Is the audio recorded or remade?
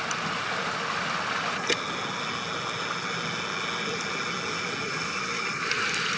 recorded